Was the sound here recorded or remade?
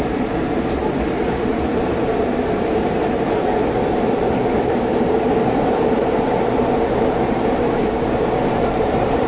remade